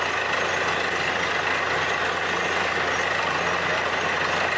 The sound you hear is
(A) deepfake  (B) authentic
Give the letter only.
B